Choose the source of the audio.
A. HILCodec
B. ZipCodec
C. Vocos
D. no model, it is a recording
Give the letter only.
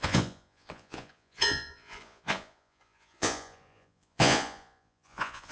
C